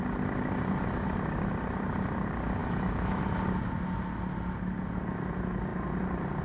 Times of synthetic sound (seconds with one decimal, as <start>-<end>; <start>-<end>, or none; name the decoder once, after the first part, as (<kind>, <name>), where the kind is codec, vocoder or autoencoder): 2.6-3.2 (autoencoder, DAC-VAE)